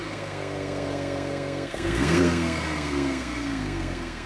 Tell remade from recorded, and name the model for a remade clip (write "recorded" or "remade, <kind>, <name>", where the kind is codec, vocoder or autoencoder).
remade, codec, SNAC